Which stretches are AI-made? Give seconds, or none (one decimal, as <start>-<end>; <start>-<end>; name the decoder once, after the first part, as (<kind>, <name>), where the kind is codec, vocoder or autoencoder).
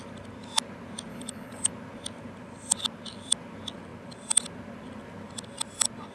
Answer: 1.1-1.7 (codec, HILCodec)